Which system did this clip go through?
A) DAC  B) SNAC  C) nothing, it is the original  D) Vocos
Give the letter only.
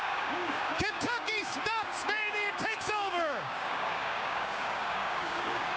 A